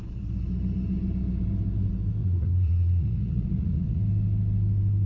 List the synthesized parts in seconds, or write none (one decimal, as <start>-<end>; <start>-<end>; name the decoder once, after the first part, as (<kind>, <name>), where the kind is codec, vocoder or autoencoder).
2.2-4.0 (vocoder, Vocos)